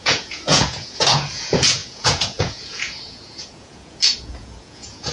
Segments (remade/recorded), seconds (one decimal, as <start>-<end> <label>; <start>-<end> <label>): 0.0-5.1 remade